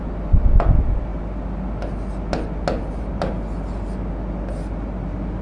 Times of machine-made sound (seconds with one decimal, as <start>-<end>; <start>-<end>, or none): none

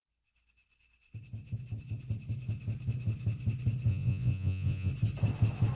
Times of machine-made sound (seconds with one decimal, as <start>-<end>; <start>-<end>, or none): 3.9-4.9

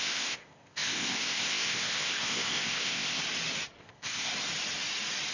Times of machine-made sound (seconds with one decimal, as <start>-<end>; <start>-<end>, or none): 0.0-3.2; 3.8-4.3

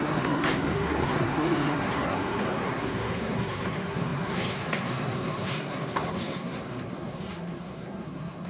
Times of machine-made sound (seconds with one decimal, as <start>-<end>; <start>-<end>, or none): 0.0-8.5